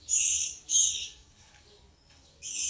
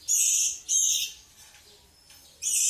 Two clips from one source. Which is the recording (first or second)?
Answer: second